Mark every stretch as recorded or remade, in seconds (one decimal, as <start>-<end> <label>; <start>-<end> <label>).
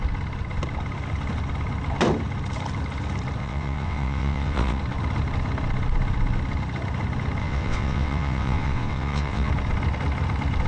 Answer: 0.0-3.4 recorded; 3.4-4.8 remade; 4.8-7.4 recorded; 7.4-9.5 remade; 9.5-10.7 recorded